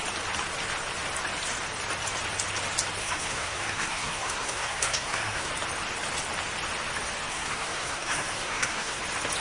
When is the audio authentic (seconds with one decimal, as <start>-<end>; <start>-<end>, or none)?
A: 0.0-3.0; 5.5-7.3; 9.0-9.4